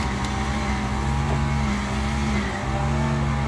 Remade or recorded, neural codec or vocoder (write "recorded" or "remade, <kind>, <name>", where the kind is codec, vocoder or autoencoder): recorded